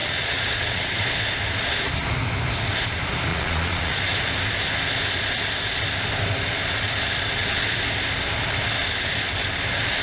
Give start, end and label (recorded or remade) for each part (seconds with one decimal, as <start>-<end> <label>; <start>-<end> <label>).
0.0-0.9 remade; 0.9-3.3 recorded; 3.3-4.0 remade; 4.0-10.0 recorded